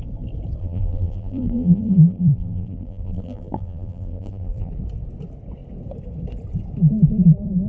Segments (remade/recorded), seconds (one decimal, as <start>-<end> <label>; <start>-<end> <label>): 0.0-0.6 recorded; 0.6-4.7 remade; 4.7-7.7 recorded